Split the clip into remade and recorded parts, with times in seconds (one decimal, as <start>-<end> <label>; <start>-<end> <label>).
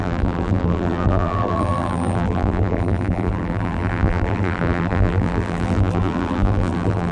0.0-7.1 remade